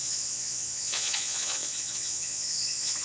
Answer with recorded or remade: remade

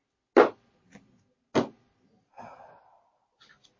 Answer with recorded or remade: recorded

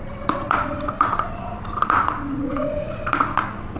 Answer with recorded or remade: remade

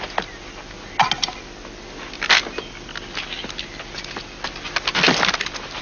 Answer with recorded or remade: recorded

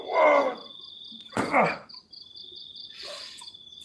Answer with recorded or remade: recorded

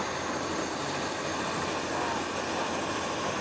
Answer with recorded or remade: recorded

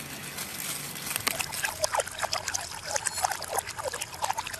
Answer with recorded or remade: recorded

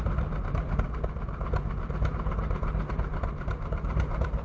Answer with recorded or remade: remade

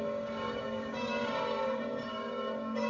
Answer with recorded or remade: remade